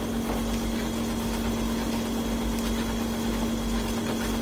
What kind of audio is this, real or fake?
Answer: real